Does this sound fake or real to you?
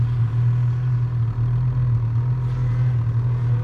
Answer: real